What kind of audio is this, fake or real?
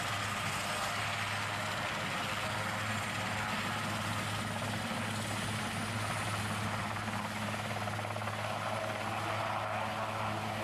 real